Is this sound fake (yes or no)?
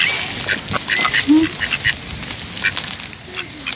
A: no